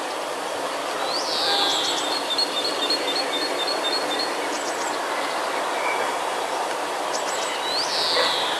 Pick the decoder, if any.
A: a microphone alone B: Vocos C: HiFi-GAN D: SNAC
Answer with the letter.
A